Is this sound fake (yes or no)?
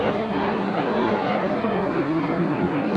yes